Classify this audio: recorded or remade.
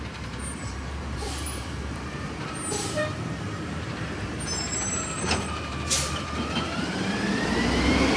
remade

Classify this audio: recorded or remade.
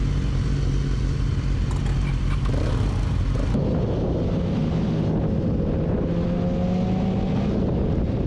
recorded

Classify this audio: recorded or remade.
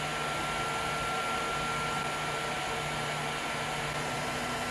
recorded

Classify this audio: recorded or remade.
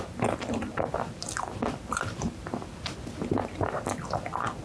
recorded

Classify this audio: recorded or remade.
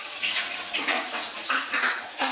remade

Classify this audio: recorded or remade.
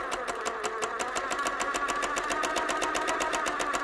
recorded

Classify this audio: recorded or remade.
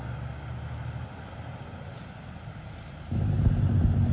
recorded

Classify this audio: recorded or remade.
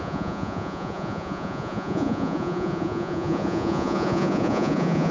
remade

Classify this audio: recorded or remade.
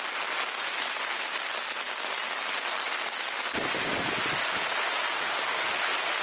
recorded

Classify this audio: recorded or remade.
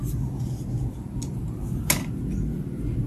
recorded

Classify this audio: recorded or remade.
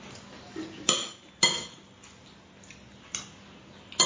recorded